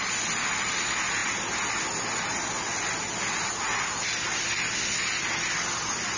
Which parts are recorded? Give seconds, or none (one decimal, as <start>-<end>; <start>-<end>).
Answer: 0.0-6.2